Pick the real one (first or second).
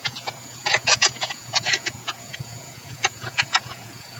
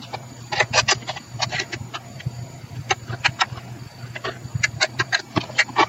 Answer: second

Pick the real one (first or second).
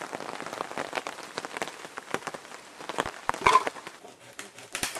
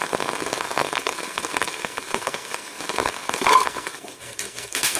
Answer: first